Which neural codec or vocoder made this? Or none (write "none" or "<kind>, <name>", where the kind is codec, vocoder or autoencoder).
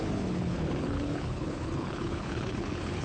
codec, HILCodec